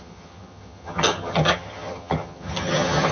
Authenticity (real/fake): fake